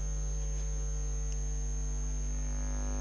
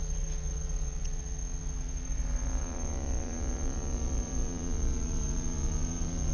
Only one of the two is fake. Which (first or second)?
second